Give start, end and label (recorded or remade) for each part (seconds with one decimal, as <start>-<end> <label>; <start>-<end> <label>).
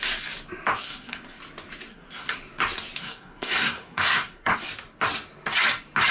0.0-0.8 recorded; 0.8-1.4 remade; 1.4-1.9 recorded; 1.9-2.4 remade; 2.4-3.0 recorded; 3.0-4.6 remade; 4.6-6.1 recorded